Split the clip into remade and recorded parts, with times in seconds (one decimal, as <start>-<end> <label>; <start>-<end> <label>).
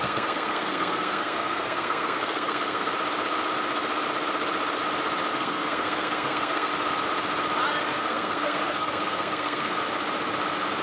0.0-2.9 remade; 2.9-5.3 recorded; 5.3-6.7 remade; 6.7-7.9 recorded; 7.9-9.8 remade; 9.8-10.8 recorded